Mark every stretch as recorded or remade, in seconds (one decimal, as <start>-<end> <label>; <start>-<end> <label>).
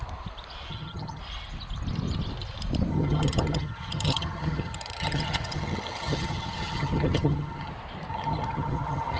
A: 0.0-0.7 recorded; 0.7-1.2 remade; 1.2-2.9 recorded; 2.9-7.7 remade; 7.7-8.1 recorded; 8.1-9.2 remade